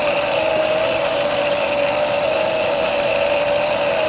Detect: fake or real real